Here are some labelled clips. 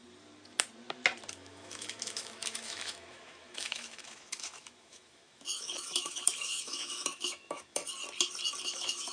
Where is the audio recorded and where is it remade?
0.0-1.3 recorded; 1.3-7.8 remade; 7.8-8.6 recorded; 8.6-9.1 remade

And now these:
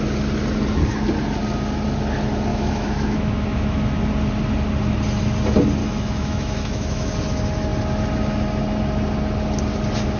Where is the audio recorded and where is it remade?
0.0-2.5 recorded; 2.5-4.0 remade; 4.0-5.8 recorded; 5.8-7.1 remade; 7.1-10.2 recorded

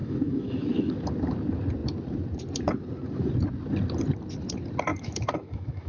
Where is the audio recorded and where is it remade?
0.0-0.9 remade; 0.9-4.9 recorded; 4.9-5.9 remade